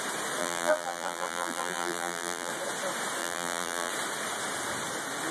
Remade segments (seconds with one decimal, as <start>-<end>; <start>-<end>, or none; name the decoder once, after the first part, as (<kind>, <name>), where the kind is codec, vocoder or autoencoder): 0.4-2.5 (vocoder, BigVGAN v2); 3.2-3.9